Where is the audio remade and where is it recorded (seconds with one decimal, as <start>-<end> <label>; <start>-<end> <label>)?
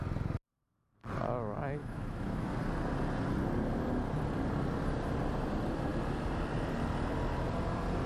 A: 0.0-1.8 recorded; 1.8-2.5 remade; 2.5-8.1 recorded